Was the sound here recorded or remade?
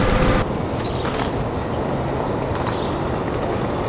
recorded